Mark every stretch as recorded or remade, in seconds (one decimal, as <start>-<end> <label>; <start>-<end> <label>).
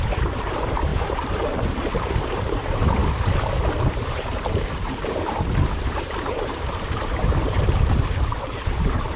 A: 0.0-3.0 remade; 3.0-3.8 recorded; 3.8-9.2 remade